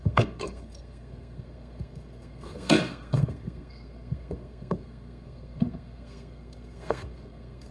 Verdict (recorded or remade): remade